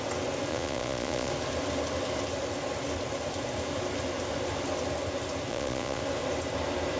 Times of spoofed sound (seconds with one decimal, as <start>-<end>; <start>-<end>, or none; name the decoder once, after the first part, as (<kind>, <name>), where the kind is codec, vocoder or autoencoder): 0.5-1.3 (vocoder, Vocos); 5.5-6.0